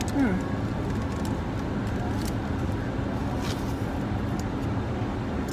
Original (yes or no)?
yes